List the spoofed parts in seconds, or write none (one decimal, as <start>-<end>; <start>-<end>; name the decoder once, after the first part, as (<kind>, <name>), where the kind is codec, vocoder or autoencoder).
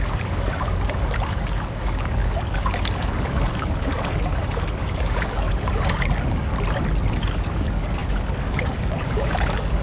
0.0-6.5 (codec, DAC); 7.1-9.8